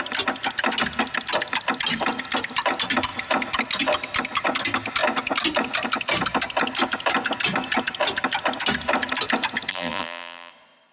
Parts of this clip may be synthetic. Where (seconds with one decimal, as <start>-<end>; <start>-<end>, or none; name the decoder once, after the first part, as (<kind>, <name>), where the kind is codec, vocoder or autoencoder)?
9.7-10.5 (vocoder, BigVGAN v2)